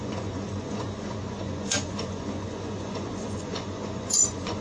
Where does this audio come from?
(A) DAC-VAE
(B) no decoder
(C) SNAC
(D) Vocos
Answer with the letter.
D